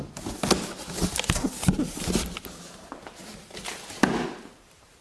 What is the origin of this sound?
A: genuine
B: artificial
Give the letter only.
A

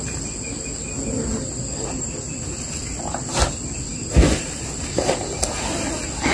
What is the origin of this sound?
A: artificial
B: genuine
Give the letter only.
B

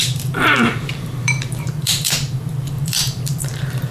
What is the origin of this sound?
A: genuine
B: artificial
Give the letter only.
B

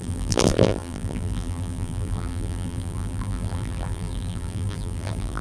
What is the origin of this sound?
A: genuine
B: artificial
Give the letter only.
B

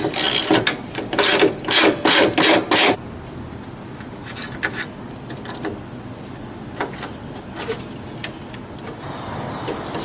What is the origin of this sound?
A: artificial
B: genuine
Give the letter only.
B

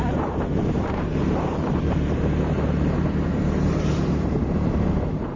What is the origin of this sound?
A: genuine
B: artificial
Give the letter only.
B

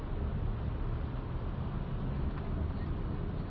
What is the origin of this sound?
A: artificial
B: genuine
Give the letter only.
B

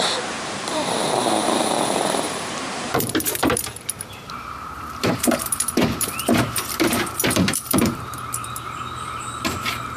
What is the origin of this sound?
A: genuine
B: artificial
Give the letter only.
B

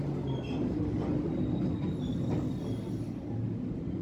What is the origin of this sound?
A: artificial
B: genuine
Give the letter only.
B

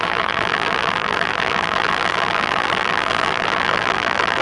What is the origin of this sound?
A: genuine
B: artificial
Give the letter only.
B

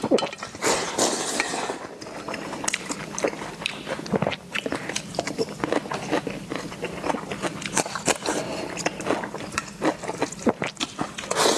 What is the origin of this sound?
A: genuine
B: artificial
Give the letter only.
B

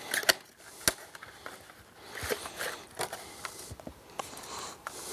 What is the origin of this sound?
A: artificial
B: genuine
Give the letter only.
B